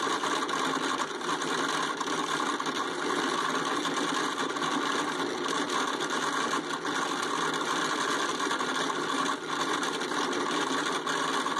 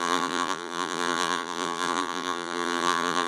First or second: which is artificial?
second